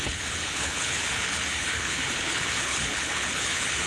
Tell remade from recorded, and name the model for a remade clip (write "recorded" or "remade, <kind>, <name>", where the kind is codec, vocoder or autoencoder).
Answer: remade, codec, HILCodec